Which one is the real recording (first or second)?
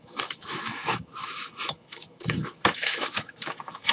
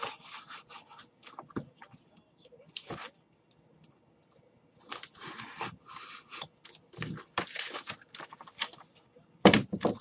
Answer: second